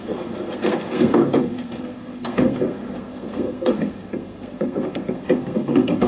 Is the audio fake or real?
fake